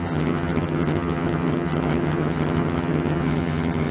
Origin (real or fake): fake